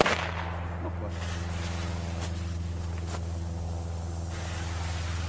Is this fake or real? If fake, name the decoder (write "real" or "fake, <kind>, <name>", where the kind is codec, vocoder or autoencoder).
real